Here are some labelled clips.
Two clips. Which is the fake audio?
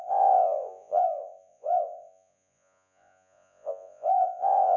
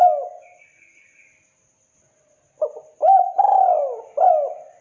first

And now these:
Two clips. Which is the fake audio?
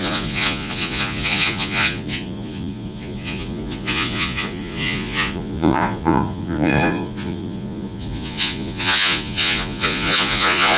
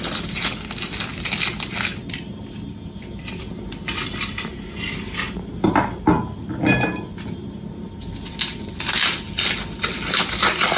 first